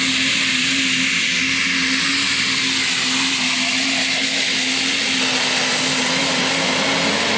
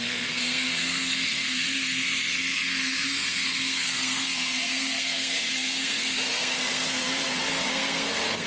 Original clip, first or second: first